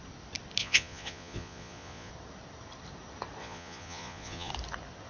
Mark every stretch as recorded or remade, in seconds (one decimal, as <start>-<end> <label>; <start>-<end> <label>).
0.0-0.6 recorded; 0.6-2.1 remade; 2.1-3.4 recorded; 3.4-4.5 remade; 4.5-5.1 recorded